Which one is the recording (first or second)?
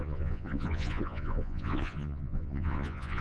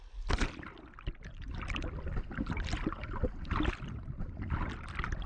second